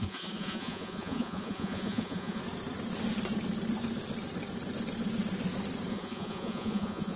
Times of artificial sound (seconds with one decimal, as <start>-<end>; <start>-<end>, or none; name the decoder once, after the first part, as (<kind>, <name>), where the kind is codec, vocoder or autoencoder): 0.0-2.4 (vocoder, Vocos); 5.9-7.2